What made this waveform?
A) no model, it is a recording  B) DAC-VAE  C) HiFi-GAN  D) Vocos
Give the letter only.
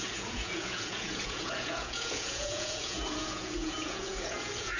D